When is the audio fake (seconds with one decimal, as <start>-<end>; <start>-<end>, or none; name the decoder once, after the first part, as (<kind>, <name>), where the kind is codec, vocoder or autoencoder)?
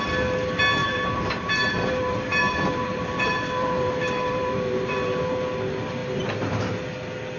0.8-5.2 (vocoder, BigVGAN v2); 6.0-6.6